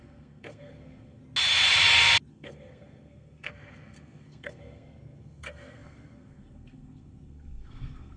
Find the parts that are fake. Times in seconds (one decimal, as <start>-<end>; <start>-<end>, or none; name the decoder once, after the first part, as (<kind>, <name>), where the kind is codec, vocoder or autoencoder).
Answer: 0.0-1.2 (codec, SNAC); 2.3-8.2